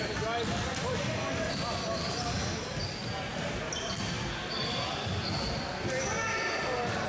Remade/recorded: recorded